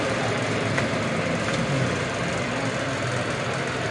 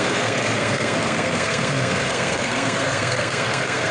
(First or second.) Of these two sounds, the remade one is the second